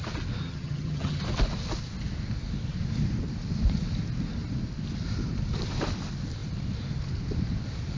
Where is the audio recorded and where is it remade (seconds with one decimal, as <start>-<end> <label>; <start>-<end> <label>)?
0.0-0.4 recorded; 0.4-1.2 remade; 1.2-8.0 recorded